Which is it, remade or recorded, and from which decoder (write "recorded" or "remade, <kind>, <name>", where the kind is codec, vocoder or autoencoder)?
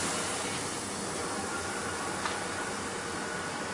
recorded